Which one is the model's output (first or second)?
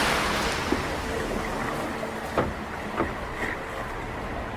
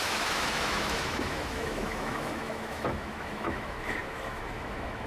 second